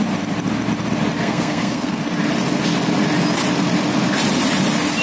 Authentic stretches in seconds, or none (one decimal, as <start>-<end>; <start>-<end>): 0.0-1.2; 2.0-5.0